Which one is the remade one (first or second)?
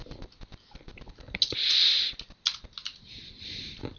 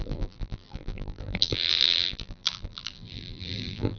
second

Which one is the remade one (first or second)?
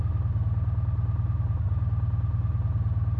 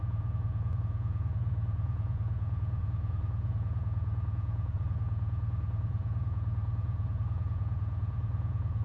second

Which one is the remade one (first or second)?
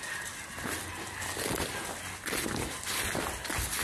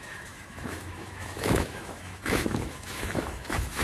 second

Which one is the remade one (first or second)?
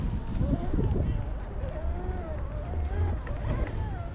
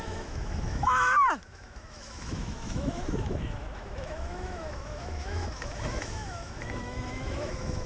second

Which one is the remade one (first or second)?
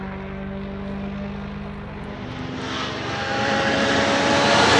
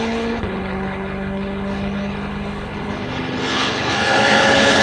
second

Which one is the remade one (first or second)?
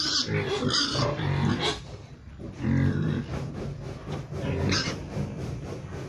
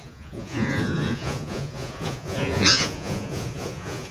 second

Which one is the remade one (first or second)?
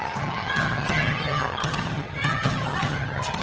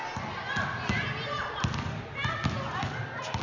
first